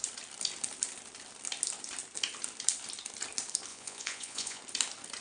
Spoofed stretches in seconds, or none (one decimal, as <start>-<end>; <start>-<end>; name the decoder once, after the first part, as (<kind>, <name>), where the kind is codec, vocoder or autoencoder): 3.7-4.6 (vocoder, Vocos)